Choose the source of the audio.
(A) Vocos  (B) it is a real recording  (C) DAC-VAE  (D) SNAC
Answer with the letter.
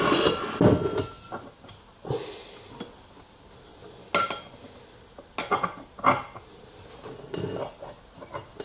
B